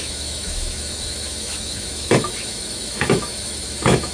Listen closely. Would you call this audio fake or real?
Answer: fake